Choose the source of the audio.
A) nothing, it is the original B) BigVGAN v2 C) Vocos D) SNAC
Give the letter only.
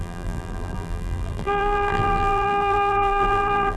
B